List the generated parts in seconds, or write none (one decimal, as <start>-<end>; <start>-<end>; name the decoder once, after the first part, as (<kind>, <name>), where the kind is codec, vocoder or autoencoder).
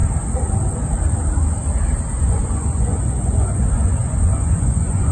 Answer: 2.2-5.1 (vocoder, Vocos)